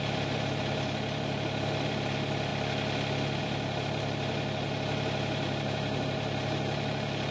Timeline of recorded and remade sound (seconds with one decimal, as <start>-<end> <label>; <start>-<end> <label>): 0.0-2.5 remade; 2.5-3.4 recorded; 3.4-7.3 remade